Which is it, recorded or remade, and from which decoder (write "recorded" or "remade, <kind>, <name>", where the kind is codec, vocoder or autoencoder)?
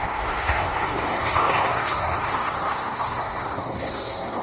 remade, codec, SNAC